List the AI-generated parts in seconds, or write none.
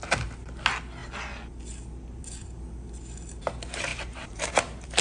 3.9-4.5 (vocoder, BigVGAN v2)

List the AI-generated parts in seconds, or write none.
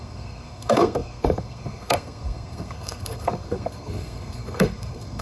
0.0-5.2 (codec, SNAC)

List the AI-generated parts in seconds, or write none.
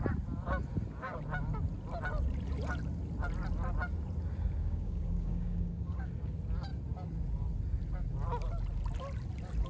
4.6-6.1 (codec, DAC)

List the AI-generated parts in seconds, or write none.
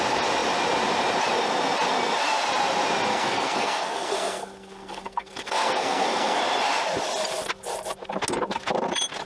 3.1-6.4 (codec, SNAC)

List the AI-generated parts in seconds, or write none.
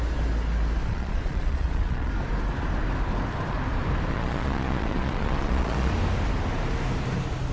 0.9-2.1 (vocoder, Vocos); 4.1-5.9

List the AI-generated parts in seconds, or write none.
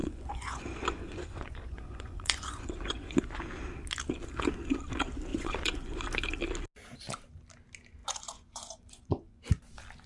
0.0-3.4 (vocoder, Vocos); 5.3-6.1; 8.0-9.4